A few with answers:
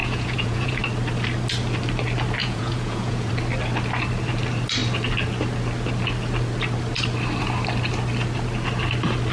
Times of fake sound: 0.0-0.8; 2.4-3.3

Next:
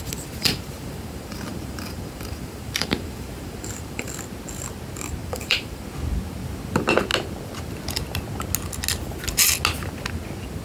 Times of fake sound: 0.4-4.1; 5.2-5.8

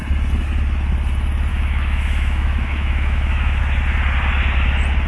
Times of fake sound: 1.5-3.6

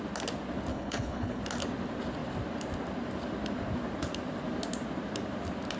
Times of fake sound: 0.7-1.4

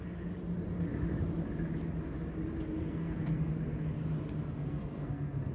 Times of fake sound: 2.8-3.5; 4.6-5.5